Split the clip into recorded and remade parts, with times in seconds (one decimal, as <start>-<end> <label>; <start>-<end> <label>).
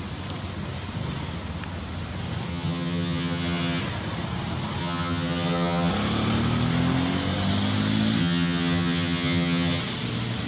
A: 0.0-2.5 recorded; 2.5-3.8 remade; 3.8-4.8 recorded; 4.8-5.9 remade; 5.9-8.2 recorded; 8.2-9.8 remade; 9.8-10.5 recorded